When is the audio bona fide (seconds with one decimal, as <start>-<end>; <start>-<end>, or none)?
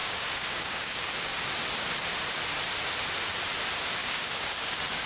1.4-4.0